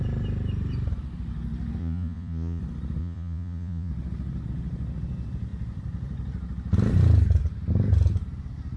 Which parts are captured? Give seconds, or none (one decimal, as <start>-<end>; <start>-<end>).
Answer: 0.0-1.8; 2.6-3.0; 3.9-8.8